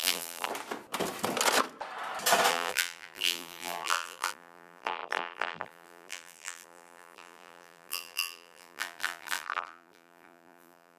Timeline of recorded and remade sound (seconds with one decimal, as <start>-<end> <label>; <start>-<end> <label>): 0.0-0.5 remade; 0.5-2.5 recorded; 2.5-11.0 remade